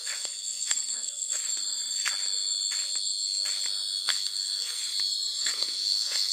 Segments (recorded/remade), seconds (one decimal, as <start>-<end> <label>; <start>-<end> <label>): 0.0-1.4 remade; 1.4-4.0 recorded; 4.0-4.8 remade; 4.8-5.4 recorded; 5.4-6.3 remade